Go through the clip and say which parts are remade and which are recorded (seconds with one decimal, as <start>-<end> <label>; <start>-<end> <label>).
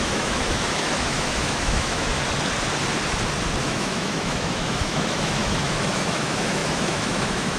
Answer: 0.0-2.2 remade; 2.2-3.6 recorded; 3.6-7.6 remade